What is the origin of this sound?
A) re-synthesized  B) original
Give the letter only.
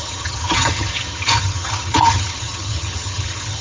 A